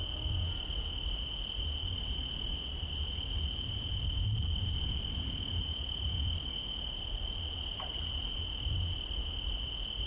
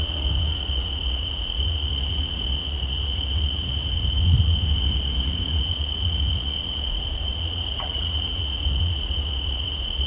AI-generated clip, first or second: second